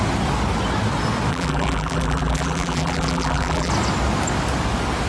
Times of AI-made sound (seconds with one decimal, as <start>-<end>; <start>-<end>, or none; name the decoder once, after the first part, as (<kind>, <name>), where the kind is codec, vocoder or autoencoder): 1.3-3.7 (vocoder, BigVGAN v2)